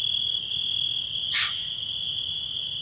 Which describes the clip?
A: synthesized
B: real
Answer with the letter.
B